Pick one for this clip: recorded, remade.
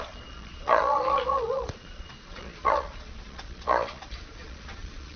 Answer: remade